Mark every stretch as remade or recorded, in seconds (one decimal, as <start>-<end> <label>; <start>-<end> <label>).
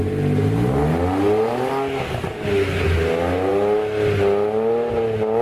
0.0-5.4 recorded